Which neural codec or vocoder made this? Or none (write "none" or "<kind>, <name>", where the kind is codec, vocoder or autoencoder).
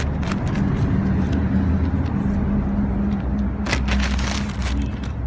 none